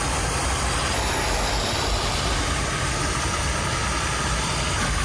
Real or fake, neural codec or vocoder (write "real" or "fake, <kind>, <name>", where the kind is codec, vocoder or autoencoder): real